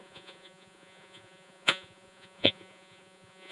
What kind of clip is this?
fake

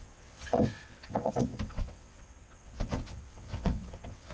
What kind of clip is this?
fake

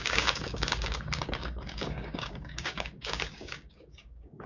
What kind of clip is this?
fake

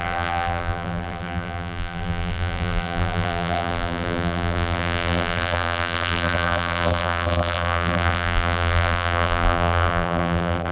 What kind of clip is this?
fake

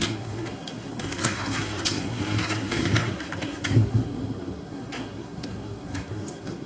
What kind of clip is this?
fake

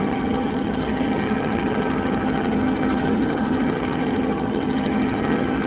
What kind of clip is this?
fake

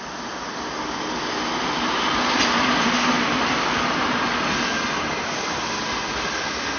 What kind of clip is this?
real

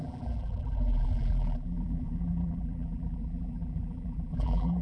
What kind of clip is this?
fake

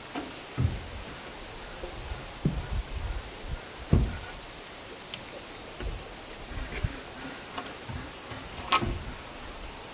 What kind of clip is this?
real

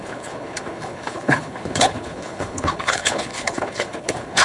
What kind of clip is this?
fake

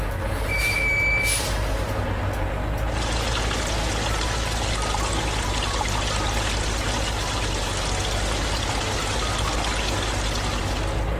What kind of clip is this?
real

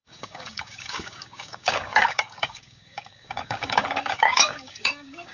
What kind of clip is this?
fake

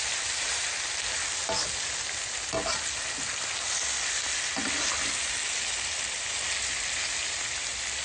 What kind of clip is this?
real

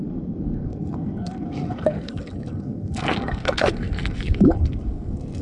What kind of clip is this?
fake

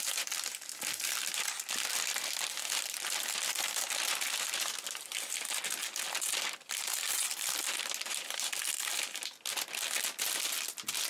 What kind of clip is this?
real